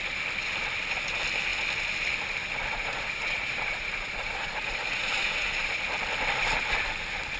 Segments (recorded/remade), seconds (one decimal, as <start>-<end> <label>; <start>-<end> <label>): 0.0-2.7 recorded; 2.7-5.8 remade; 5.8-7.4 recorded